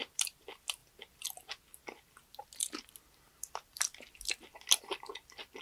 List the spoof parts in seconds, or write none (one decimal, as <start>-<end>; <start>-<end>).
0.0-0.8; 3.5-4.5